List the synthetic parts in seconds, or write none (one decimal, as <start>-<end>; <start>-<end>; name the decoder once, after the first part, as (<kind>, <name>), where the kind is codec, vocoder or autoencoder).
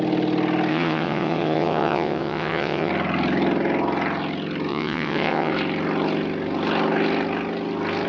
0.7-2.9 (vocoder, WaveNeXt); 4.7-5.5